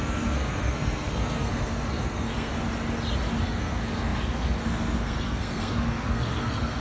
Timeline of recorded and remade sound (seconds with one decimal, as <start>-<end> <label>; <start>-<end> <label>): 0.0-2.5 remade; 2.5-3.4 recorded; 3.4-6.8 remade